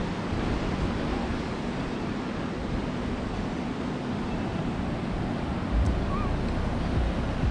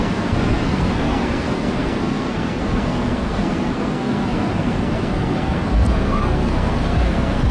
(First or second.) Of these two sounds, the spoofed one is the second